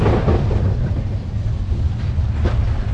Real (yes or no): yes